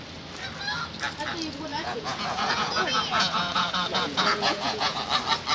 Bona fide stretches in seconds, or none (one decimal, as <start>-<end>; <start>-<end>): 0.0-1.7; 5.0-5.5